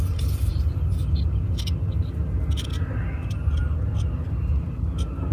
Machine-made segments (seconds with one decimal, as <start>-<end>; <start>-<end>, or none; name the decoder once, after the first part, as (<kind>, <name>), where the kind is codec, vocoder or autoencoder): none